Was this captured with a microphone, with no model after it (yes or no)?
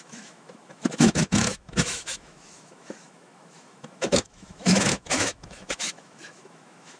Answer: no